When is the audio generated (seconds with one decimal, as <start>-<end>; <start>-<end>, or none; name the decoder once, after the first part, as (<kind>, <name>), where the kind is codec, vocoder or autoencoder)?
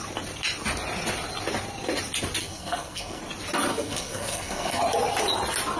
2.4-3.2 (codec, SNAC); 3.7-4.8